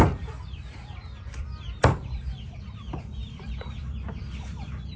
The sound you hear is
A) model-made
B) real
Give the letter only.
A